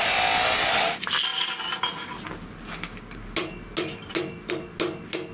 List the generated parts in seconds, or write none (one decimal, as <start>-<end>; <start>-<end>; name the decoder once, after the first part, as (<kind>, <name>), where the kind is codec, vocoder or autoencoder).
none